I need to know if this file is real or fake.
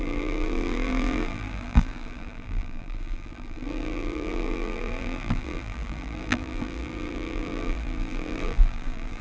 fake